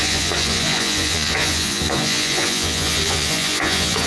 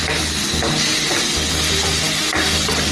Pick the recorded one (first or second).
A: second